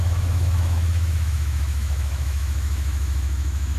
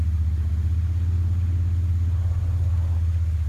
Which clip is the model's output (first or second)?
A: first